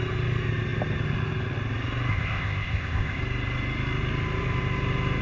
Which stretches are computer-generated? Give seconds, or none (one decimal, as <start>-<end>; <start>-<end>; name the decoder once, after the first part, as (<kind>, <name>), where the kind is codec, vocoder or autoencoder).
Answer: 2.1-3.2 (codec, ZipCodec)